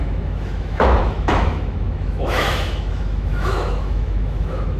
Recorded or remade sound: remade